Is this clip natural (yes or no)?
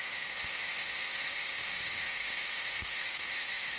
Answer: no